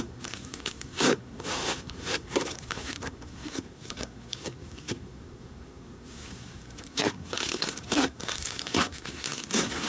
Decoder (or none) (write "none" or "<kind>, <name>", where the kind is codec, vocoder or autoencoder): codec, SNAC